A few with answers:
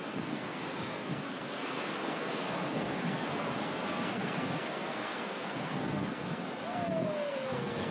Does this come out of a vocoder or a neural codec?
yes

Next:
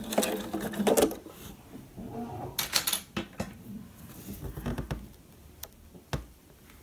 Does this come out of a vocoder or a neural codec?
no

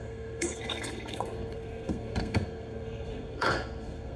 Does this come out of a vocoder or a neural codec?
yes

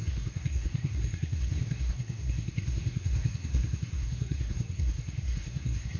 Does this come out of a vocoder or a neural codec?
yes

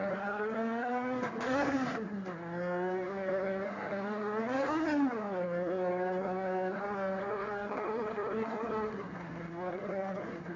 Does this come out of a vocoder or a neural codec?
yes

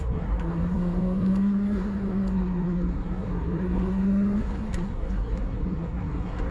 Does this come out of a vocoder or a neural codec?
yes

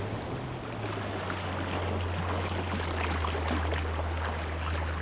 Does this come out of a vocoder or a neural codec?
no